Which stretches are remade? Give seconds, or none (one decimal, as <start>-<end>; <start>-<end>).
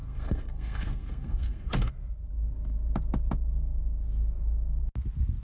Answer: 0.0-1.9